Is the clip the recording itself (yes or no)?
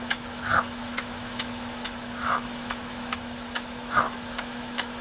no